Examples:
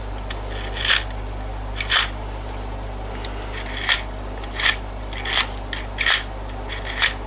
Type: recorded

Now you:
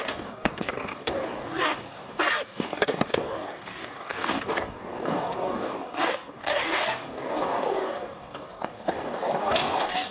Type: remade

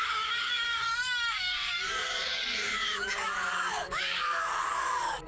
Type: remade